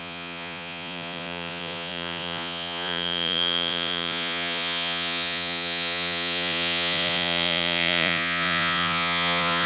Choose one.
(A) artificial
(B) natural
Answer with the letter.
A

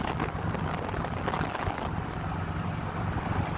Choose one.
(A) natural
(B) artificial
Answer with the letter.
A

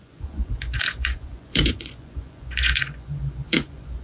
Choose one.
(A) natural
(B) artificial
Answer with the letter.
B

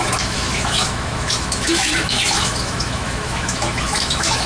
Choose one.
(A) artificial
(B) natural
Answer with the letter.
A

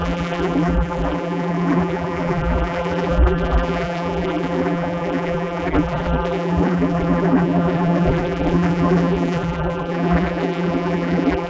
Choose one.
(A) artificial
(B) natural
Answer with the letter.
A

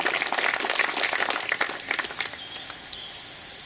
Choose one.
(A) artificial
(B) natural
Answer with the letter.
B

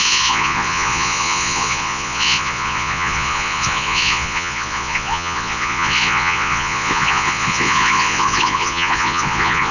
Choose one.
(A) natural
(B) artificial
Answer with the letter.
B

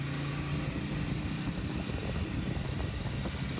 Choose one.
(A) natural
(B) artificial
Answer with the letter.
A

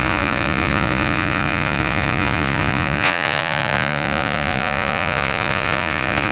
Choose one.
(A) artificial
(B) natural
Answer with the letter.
A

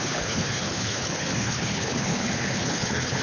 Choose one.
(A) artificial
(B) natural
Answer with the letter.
A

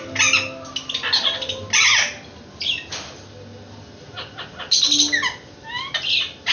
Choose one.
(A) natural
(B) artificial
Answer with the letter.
A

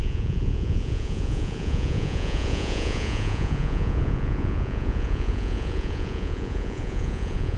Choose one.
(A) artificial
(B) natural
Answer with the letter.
A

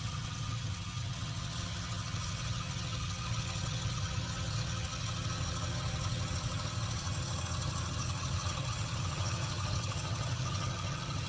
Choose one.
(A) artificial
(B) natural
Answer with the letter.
A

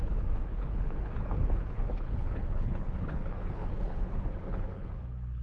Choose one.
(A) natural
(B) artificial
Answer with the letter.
B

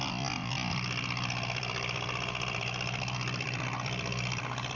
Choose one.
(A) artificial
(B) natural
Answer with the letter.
A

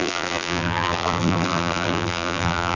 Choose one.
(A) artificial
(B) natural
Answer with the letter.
A